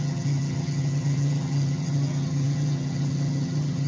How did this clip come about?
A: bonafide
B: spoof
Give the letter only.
B